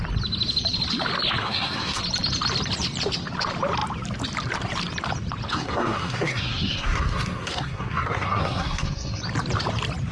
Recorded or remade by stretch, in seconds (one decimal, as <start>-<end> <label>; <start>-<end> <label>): 0.0-1.4 recorded; 1.4-2.0 remade; 2.0-5.5 recorded; 5.5-9.2 remade; 9.2-10.1 recorded